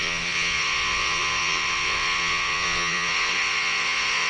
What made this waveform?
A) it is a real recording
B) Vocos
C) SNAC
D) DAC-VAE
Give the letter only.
B